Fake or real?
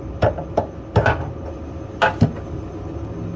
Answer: real